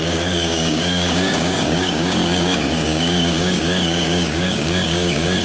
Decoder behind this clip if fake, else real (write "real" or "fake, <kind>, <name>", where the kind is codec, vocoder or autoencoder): fake, codec, DAC